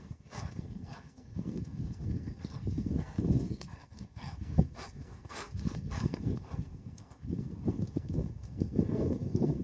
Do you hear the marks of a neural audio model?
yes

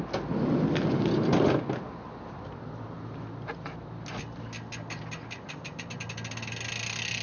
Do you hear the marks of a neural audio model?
no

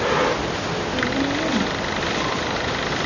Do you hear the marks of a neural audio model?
no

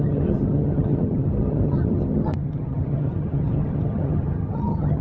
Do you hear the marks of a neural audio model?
yes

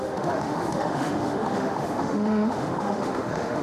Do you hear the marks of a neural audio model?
yes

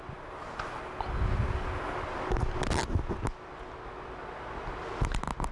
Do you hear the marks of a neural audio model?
no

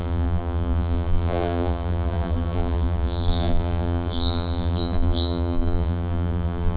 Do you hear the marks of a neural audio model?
yes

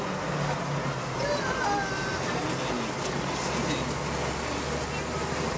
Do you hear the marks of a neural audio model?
no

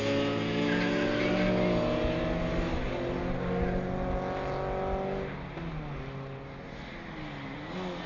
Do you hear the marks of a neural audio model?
no